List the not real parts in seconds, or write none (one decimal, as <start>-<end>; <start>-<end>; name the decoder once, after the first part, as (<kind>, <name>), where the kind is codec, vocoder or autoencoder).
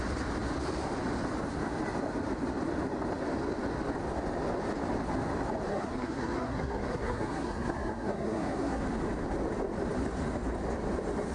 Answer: 5.7-8.8 (codec, SNAC)